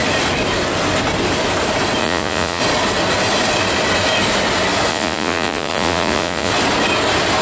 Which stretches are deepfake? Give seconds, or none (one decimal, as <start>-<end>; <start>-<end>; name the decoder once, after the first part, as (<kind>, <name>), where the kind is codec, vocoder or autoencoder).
2.0-2.6 (vocoder, Vocos); 4.9-6.5